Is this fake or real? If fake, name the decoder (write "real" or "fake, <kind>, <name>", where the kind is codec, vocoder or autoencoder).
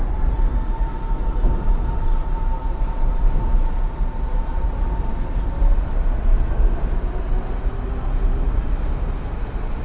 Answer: real